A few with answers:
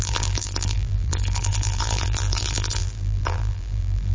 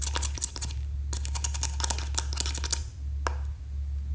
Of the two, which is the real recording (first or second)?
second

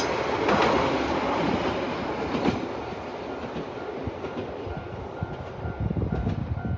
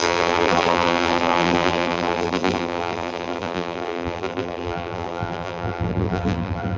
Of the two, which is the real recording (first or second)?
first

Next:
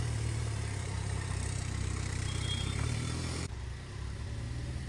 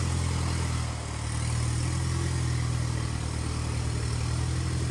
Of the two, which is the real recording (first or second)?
second